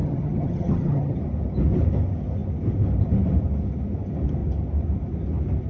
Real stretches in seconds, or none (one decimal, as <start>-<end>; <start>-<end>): 1.2-5.7